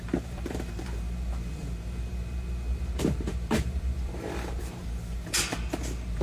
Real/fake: fake